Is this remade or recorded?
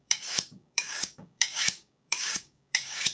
remade